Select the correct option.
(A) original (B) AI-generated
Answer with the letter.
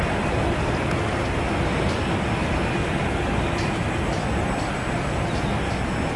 A